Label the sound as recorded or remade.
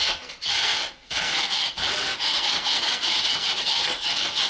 remade